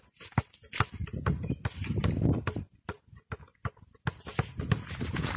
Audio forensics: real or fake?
real